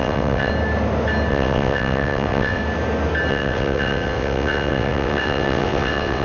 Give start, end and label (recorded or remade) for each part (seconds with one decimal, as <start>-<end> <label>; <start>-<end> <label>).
0.0-0.5 remade; 0.5-1.3 recorded; 1.3-2.6 remade; 2.6-3.3 recorded; 3.3-6.2 remade